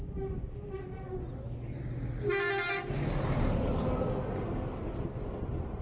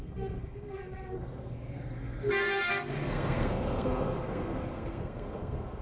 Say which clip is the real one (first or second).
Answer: first